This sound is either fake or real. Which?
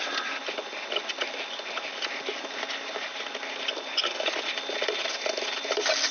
real